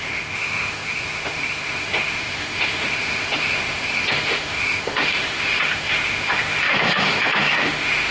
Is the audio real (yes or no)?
no